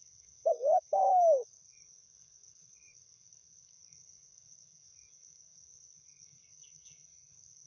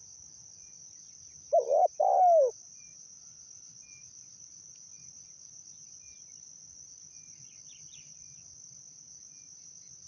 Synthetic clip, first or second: first